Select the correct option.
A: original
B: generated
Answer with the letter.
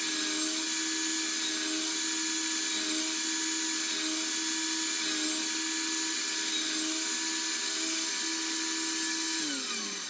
A